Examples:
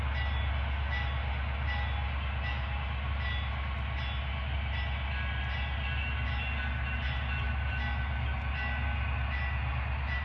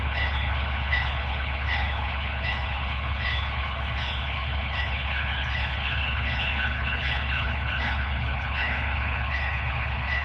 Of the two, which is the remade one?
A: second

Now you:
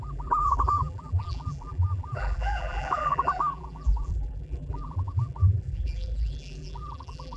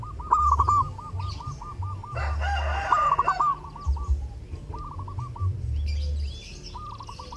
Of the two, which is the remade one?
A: first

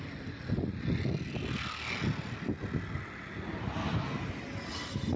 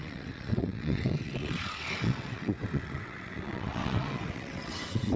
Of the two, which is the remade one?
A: second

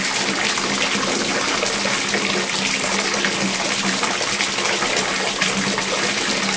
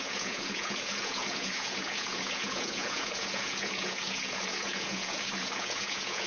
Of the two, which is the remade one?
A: second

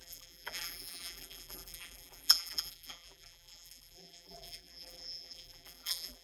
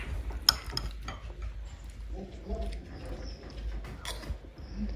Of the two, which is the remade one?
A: first